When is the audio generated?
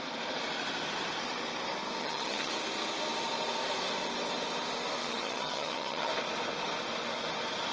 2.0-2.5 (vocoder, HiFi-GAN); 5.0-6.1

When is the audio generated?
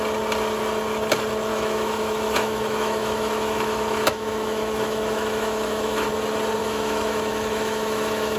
1.5-6.1 (autoencoder, DAC-VAE); 6.6-8.4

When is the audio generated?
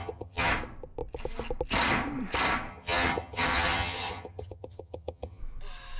0.0-0.5 (vocoder, HiFi-GAN); 2.7-5.4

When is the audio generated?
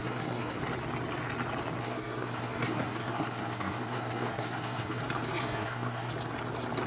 0.0-0.6 (codec, SNAC); 1.8-5.0; 5.4-6.1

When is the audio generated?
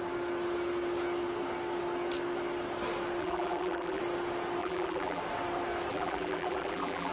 3.2-4.0 (vocoder, BigVGAN v2); 4.6-5.2; 5.9-7.1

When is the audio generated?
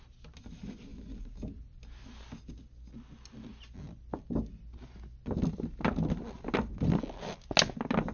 none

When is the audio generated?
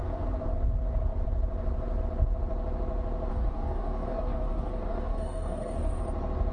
3.3-6.0 (codec, DAC)